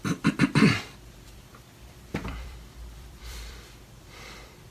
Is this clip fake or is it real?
fake